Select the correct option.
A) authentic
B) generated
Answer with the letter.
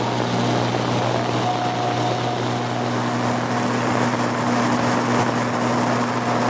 A